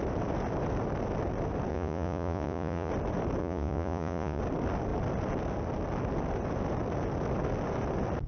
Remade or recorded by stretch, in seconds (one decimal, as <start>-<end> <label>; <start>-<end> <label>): 0.0-1.7 recorded; 1.7-2.9 remade; 2.9-3.4 recorded; 3.4-4.4 remade; 4.4-8.3 recorded